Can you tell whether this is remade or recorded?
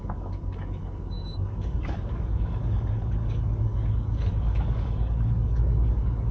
remade